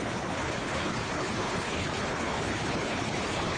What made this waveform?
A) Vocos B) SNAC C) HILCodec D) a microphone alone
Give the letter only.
C